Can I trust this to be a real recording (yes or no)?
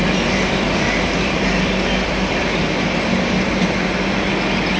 no